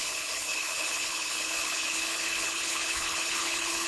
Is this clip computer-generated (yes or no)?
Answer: yes